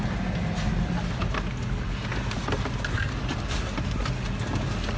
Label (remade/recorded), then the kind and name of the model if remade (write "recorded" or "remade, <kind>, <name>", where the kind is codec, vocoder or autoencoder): recorded